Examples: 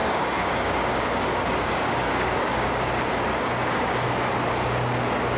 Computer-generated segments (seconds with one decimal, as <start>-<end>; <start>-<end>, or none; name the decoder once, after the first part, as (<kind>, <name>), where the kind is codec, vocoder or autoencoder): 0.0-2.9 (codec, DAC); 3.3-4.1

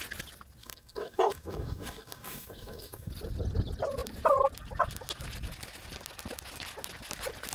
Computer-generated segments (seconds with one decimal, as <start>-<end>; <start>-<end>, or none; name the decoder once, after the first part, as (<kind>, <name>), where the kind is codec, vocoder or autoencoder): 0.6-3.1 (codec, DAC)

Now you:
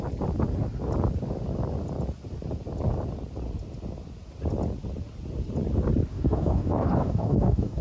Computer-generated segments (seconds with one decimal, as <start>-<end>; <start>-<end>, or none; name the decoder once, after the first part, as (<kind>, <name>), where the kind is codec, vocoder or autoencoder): 6.1-7.8 (codec, DAC)

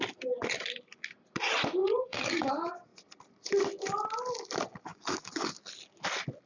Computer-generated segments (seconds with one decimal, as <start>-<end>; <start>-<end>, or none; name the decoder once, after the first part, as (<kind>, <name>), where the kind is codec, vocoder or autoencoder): 1.8-2.5 (codec, DAC); 4.9-5.6

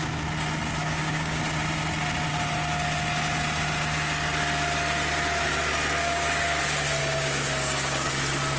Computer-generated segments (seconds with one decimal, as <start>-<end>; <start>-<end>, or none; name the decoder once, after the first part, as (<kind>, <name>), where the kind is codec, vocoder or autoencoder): 0.8-1.4 (codec, DAC); 6.0-6.6; 7.0-8.1

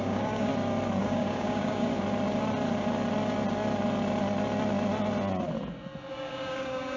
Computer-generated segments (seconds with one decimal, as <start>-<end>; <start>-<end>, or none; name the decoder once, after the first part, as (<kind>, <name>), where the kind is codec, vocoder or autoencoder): 0.0-0.5 (codec, DAC); 1.0-1.9; 6.1-7.0

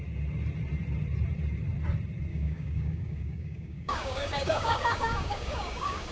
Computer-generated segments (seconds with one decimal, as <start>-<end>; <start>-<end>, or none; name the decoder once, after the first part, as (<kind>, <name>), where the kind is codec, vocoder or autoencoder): 2.3-6.1 (codec, DAC)